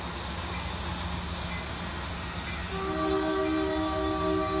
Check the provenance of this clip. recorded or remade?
recorded